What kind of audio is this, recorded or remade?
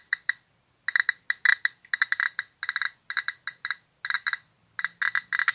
recorded